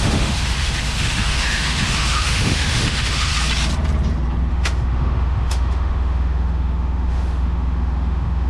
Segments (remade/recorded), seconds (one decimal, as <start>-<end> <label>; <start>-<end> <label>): 0.0-3.3 remade; 3.3-4.5 recorded; 4.5-8.5 remade